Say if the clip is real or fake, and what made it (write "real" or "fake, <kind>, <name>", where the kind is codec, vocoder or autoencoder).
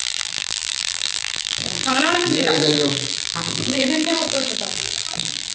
fake, vocoder, BigVGAN v2